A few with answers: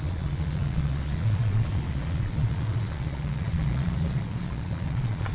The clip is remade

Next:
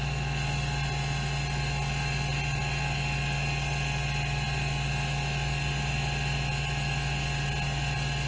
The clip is recorded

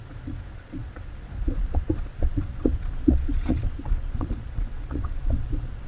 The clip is remade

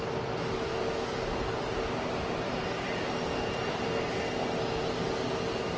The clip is recorded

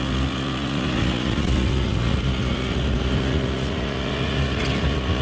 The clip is remade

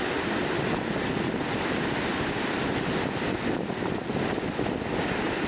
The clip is recorded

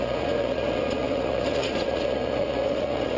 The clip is remade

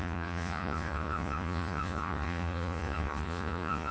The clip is remade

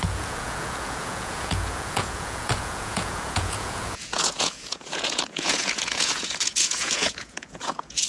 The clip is remade